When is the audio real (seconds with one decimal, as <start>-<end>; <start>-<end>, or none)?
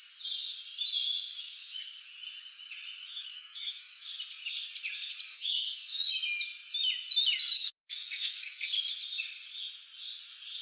0.0-1.3; 1.8-3.0; 4.1-5.3; 6.2-7.5; 8.6-10.6